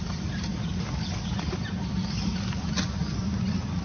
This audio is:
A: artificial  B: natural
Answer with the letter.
B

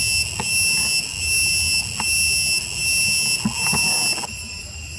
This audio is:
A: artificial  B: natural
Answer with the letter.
B